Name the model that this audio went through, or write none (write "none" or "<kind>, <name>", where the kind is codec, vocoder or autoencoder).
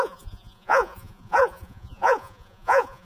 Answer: vocoder, Vocos